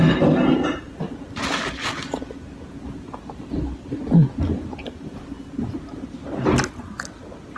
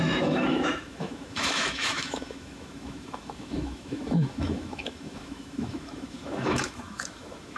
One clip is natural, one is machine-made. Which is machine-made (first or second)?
second